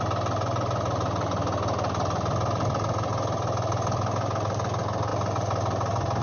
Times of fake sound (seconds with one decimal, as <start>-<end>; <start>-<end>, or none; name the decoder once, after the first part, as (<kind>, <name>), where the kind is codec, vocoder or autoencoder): none